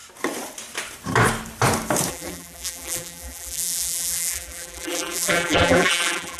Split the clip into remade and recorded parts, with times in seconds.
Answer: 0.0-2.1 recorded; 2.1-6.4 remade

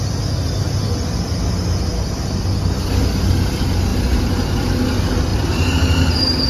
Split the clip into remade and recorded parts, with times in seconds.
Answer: 0.0-3.9 recorded; 3.9-4.6 remade; 4.6-5.3 recorded; 5.3-6.1 remade; 6.1-6.5 recorded

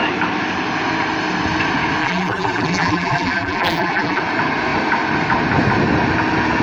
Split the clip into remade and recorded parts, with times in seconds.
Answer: 0.0-2.0 recorded; 2.0-4.2 remade; 4.2-6.6 recorded